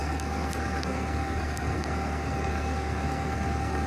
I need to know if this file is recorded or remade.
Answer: remade